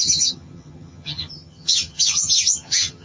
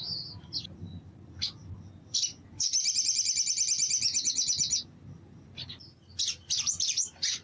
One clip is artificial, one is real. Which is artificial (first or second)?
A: first